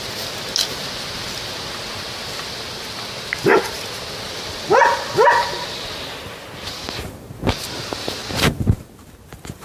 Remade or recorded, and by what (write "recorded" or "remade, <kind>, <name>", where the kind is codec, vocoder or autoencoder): recorded